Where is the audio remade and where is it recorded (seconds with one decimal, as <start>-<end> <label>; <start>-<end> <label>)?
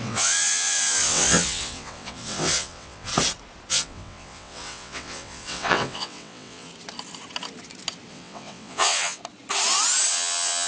0.0-3.1 remade; 3.1-3.7 recorded; 3.7-6.7 remade; 6.7-8.1 recorded; 8.1-9.2 remade; 9.2-10.1 recorded; 10.1-10.7 remade